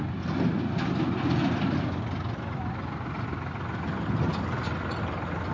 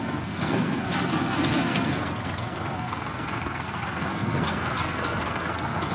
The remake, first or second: second